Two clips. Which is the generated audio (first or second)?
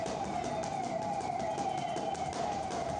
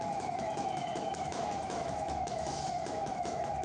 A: second